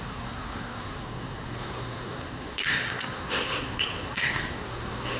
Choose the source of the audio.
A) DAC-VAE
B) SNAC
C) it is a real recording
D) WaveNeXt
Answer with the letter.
B